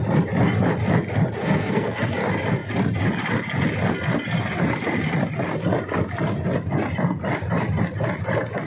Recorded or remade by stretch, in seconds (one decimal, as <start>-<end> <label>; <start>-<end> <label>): 0.0-1.4 recorded; 1.4-2.1 remade; 2.1-8.7 recorded